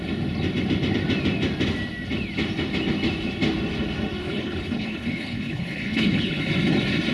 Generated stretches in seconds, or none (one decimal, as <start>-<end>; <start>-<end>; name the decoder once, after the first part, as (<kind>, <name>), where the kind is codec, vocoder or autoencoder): 4.2-6.4 (codec, HILCodec)